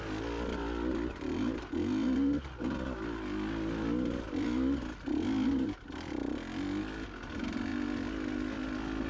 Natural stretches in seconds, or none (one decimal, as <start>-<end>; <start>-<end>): 0.0-9.1

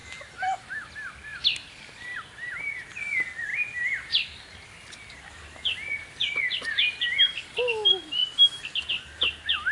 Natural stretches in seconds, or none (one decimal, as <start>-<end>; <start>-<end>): 0.9-9.7

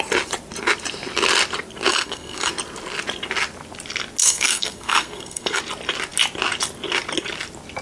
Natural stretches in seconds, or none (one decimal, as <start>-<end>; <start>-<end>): 0.0-1.9; 2.5-4.2; 5.6-7.8